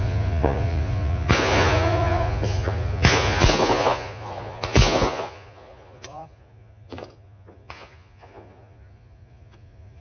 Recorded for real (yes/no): no